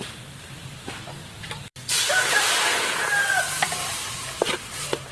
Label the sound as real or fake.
fake